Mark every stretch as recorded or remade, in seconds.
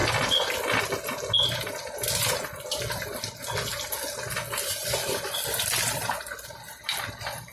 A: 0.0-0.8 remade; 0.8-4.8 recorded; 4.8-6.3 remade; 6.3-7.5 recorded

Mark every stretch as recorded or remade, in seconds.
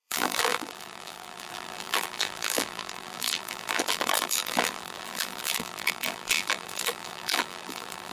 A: 0.0-8.1 remade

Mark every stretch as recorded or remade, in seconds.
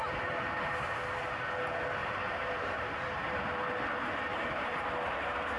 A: 0.0-0.7 remade; 0.7-2.0 recorded; 2.0-3.5 remade; 3.5-4.3 recorded; 4.3-4.9 remade; 4.9-5.6 recorded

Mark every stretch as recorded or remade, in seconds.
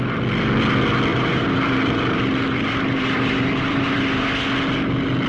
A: 0.0-1.1 recorded; 1.1-4.3 remade; 4.3-5.3 recorded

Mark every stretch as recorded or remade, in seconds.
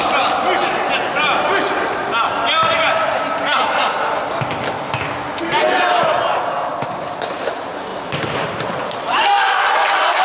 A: 0.0-0.6 recorded; 0.6-2.1 remade; 2.1-7.9 recorded; 7.9-9.5 remade; 9.5-10.2 recorded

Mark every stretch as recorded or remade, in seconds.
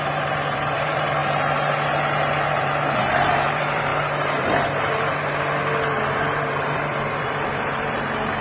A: 0.0-1.2 remade; 1.2-2.5 recorded; 2.5-3.9 remade; 3.9-6.6 recorded; 6.6-8.4 remade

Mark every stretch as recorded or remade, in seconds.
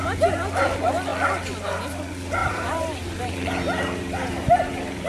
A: 0.0-2.4 recorded; 2.4-5.1 remade